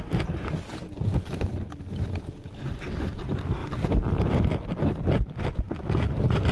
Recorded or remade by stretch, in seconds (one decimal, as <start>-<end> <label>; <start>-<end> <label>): 0.0-6.5 recorded